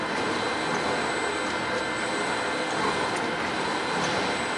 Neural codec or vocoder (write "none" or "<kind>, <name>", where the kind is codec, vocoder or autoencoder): none